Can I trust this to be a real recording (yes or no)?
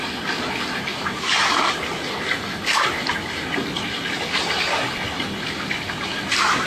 yes